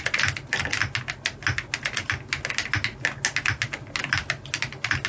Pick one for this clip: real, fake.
real